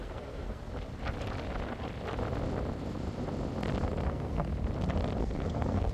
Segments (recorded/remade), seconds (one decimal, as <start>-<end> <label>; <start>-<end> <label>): 0.0-0.6 remade; 0.6-4.1 recorded; 4.1-4.5 remade; 4.5-5.2 recorded; 5.2-5.9 remade